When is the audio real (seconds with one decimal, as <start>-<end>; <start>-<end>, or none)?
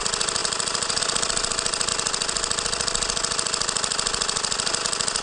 0.0-0.4; 1.0-5.2